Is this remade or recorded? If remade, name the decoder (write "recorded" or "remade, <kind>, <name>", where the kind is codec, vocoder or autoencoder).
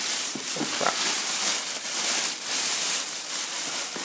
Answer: remade, vocoder, BigVGAN v2